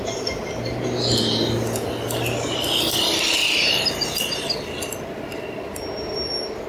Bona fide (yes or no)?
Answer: yes